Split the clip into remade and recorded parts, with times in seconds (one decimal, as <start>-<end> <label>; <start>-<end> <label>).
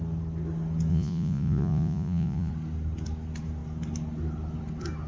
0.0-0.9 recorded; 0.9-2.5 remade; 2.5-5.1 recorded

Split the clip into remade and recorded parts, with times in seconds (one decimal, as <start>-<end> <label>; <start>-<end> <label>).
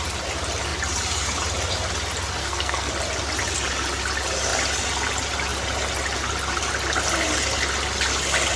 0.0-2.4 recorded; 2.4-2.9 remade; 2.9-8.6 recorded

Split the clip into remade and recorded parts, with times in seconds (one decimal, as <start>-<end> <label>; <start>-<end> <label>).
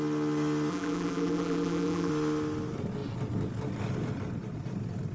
0.0-0.7 recorded; 0.7-2.1 remade; 2.1-5.1 recorded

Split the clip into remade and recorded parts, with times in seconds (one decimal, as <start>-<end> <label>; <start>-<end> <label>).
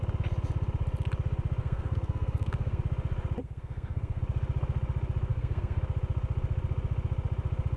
0.0-1.6 recorded; 1.6-2.8 remade; 2.8-3.4 recorded; 3.4-4.2 remade; 4.2-5.3 recorded; 5.3-5.8 remade; 5.8-7.8 recorded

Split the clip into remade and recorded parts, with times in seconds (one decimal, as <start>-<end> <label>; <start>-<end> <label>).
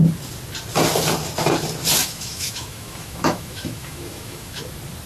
0.0-2.0 recorded; 2.0-4.6 remade; 4.6-5.1 recorded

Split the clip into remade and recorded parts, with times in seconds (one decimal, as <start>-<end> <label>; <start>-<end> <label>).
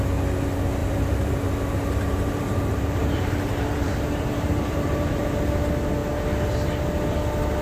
0.0-0.8 recorded; 0.8-5.4 remade; 5.4-7.6 recorded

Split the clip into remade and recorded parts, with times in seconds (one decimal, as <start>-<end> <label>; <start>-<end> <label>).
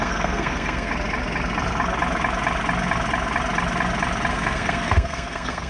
0.0-0.9 remade; 0.9-4.3 recorded; 4.3-5.7 remade